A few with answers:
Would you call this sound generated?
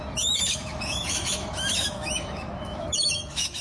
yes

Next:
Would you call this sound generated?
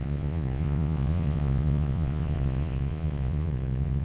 yes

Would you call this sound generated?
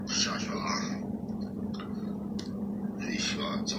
no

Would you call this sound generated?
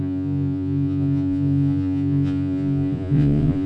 yes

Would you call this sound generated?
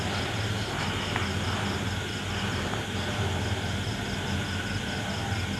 no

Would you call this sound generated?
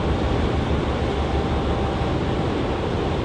no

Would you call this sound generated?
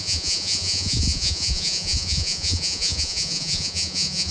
yes